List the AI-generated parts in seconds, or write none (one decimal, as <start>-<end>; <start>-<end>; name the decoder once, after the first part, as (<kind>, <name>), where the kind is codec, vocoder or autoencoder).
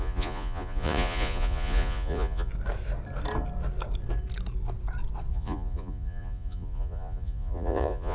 0.0-2.5 (vocoder, Vocos); 5.3-8.1